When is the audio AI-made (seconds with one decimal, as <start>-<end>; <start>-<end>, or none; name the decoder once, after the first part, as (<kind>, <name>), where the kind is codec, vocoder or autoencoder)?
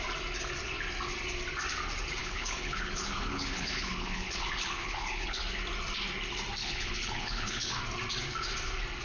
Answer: 2.2-5.4 (codec, HILCodec); 6.6-7.8